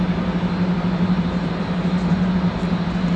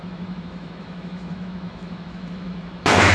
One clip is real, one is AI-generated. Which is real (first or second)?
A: first